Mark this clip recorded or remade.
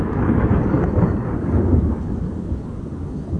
remade